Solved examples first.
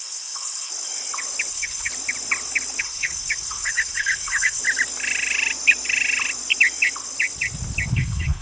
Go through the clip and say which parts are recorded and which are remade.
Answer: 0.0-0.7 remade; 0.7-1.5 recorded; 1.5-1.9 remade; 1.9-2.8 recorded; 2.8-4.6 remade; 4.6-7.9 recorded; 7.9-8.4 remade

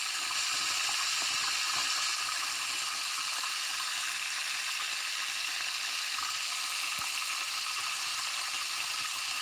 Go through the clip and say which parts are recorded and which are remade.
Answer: 0.0-9.4 recorded

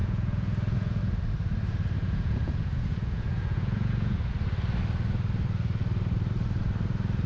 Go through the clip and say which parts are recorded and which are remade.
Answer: 0.0-1.0 remade; 1.0-2.0 recorded; 2.0-4.3 remade; 4.3-7.3 recorded

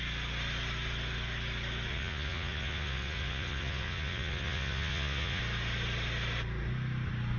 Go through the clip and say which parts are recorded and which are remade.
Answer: 0.0-1.9 recorded; 1.9-5.4 remade; 5.4-7.4 recorded

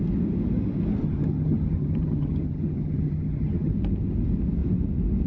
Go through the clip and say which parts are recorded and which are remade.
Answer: 0.0-1.0 recorded; 1.0-3.7 remade; 3.7-5.3 recorded